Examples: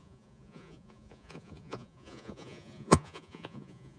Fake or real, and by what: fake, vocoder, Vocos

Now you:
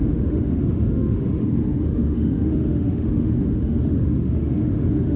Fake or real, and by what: fake, autoencoder, DAC-VAE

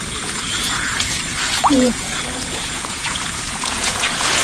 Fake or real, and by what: fake, vocoder, Vocos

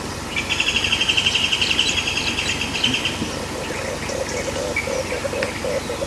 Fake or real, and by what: real